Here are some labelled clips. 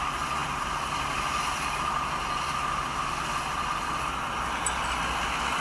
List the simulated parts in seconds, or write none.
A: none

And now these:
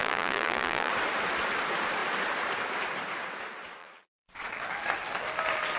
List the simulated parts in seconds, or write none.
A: 0.0-0.9; 3.8-4.5

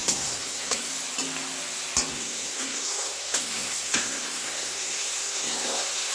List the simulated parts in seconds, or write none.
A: 0.0-0.9; 2.1-6.1

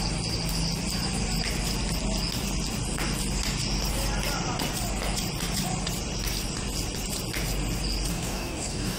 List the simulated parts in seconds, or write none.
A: 8.1-9.0

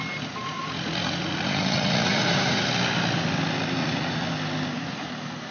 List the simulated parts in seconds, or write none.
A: 0.4-2.7; 3.8-4.3

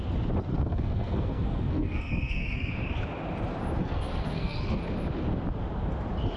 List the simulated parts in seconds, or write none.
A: 0.5-2.7; 3.8-4.8

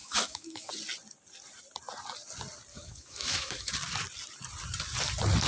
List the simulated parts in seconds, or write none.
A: 0.0-0.7; 2.7-3.7